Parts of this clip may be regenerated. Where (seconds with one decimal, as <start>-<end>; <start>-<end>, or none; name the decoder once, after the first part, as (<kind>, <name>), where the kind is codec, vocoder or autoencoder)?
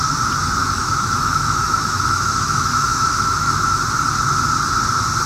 0.6-3.8 (autoencoder, DAC-VAE)